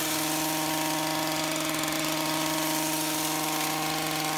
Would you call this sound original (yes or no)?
yes